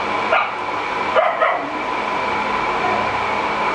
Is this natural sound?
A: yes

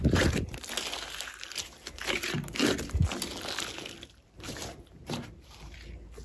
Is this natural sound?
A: yes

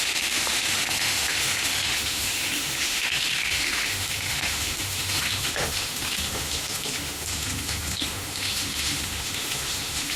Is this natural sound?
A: no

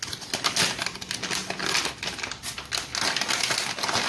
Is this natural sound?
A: yes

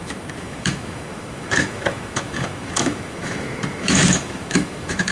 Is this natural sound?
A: no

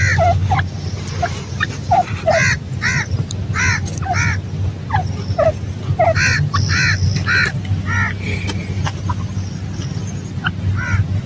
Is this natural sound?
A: yes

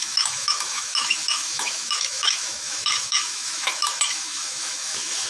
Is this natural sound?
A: no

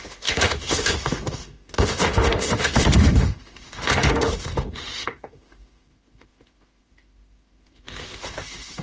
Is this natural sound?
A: no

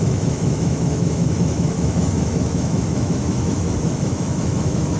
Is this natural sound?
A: no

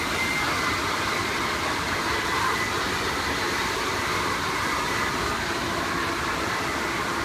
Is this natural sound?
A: yes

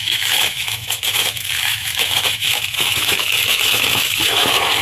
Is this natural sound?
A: no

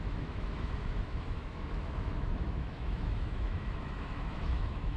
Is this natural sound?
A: no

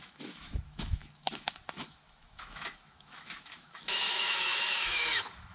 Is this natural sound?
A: no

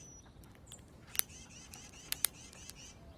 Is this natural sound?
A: yes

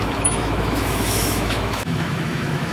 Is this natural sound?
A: no